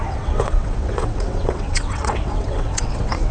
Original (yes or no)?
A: no